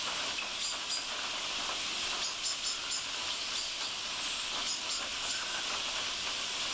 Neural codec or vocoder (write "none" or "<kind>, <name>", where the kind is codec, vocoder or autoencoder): none